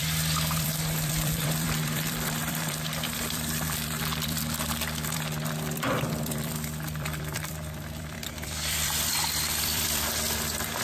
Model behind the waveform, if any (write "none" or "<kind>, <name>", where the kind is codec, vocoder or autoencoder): vocoder, BigVGAN v2